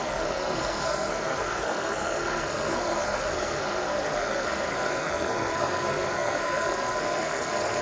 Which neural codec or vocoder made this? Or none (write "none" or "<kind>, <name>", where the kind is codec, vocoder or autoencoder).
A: codec, SNAC